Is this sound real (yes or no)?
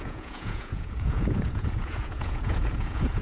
no